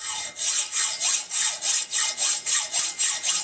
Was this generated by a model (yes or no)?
no